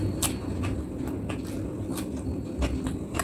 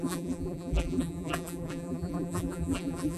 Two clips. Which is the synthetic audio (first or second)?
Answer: second